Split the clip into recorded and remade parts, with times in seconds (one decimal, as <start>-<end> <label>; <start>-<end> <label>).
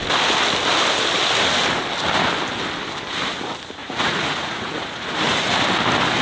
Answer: 0.0-3.8 recorded; 3.8-5.6 remade; 5.6-6.2 recorded